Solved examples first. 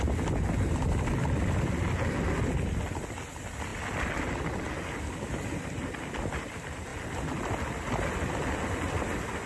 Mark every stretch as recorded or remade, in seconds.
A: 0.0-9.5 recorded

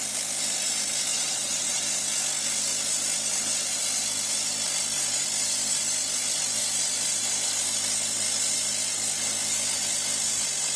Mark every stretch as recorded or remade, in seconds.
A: 0.0-1.1 recorded; 1.1-1.8 remade; 1.8-10.8 recorded

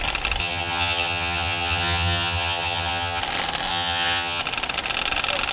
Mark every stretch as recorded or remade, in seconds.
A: 0.0-0.4 recorded; 0.4-3.2 remade; 3.2-3.7 recorded; 3.7-4.4 remade; 4.4-5.5 recorded